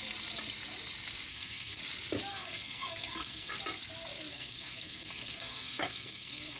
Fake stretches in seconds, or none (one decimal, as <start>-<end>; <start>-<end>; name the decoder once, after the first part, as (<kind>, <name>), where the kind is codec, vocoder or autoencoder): 1.3-1.8 (codec, SNAC); 2.3-3.5; 4.3-6.6